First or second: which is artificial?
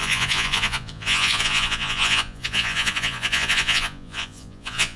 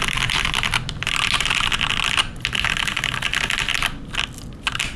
first